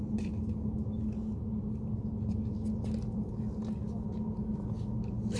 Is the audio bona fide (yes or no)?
yes